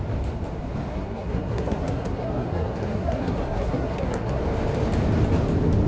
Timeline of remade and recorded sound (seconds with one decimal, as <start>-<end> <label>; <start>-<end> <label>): 0.0-0.9 recorded; 0.9-4.4 remade; 4.4-5.9 recorded